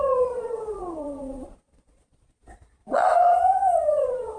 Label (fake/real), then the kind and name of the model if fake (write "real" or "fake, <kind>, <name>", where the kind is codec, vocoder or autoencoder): fake, vocoder, Vocos